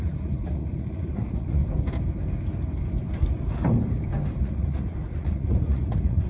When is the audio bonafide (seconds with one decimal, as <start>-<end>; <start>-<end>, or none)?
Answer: 1.6-4.4